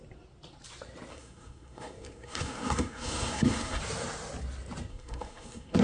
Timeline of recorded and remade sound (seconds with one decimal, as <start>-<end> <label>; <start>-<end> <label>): 0.0-1.1 recorded; 1.1-3.8 remade; 3.8-4.9 recorded; 4.9-5.8 remade